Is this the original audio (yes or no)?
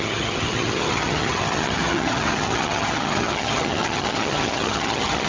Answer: no